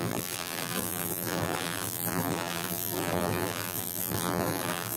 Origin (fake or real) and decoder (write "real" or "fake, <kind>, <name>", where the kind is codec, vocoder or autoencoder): fake, vocoder, BigVGAN v2